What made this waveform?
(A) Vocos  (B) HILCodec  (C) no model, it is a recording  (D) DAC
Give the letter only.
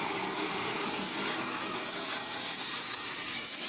D